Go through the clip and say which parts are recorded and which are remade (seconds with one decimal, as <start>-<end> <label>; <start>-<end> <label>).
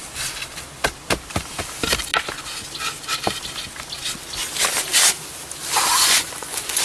0.0-5.9 recorded; 5.9-6.8 remade